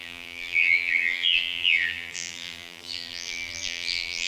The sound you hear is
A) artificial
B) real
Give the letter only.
A